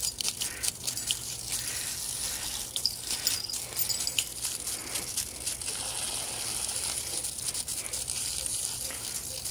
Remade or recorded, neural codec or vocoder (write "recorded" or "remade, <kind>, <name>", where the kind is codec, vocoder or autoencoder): recorded